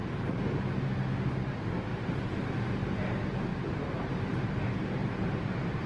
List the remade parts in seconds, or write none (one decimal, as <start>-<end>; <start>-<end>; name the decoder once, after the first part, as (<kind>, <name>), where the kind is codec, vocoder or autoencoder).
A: 1.9-2.5 (vocoder, BigVGAN v2); 3.5-4.1; 5.0-5.9